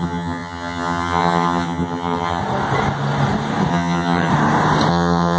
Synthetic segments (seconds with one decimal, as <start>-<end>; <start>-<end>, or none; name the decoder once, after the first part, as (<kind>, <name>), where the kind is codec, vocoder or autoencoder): 0.0-2.4 (vocoder, HiFi-GAN); 3.7-4.3; 4.9-5.4